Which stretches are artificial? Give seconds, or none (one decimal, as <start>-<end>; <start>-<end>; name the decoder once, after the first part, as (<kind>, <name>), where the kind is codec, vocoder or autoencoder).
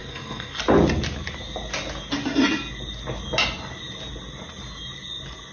0.0-0.6 (codec, SNAC)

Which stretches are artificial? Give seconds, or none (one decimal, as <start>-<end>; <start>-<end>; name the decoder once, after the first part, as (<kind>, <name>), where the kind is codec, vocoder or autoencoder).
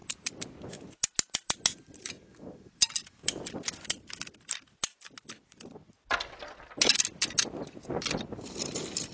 none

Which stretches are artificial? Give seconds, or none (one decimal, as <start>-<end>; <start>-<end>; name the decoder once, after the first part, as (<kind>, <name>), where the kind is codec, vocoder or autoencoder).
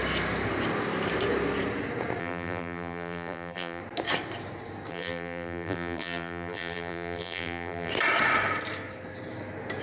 2.2-3.8 (vocoder, BigVGAN v2); 4.9-7.9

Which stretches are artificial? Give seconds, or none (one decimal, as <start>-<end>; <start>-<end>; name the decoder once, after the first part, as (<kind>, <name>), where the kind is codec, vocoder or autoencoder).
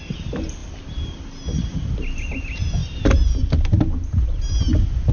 none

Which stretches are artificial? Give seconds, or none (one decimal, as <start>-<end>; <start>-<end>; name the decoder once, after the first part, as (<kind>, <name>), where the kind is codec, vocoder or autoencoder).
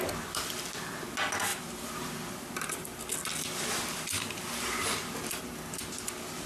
1.5-5.4 (vocoder, BigVGAN v2)